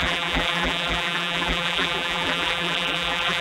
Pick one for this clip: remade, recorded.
remade